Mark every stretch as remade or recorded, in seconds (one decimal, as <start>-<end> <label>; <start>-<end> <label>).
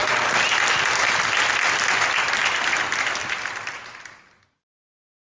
0.0-5.3 recorded